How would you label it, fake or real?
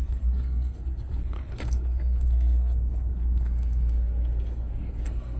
fake